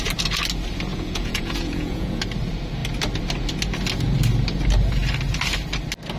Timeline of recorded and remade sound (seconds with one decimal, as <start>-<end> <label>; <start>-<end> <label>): 0.0-0.9 recorded; 0.9-2.2 remade; 2.2-6.2 recorded